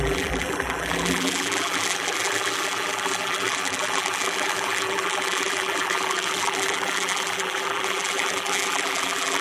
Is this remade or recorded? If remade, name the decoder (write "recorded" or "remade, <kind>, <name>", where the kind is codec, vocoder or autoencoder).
remade, vocoder, BigVGAN v2